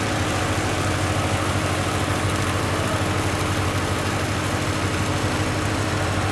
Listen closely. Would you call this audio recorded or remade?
recorded